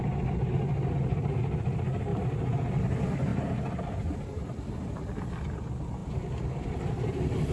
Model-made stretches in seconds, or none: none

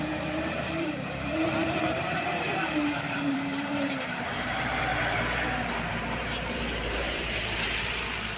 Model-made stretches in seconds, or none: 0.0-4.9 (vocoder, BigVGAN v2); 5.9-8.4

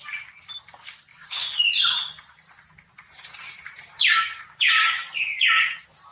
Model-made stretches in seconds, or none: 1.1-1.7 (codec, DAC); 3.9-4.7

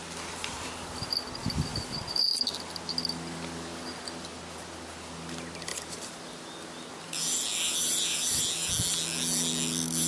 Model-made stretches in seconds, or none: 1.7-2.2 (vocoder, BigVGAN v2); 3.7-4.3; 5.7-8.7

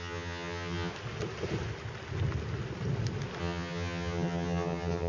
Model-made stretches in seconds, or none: 0.0-0.9 (vocoder, HiFi-GAN); 3.4-5.1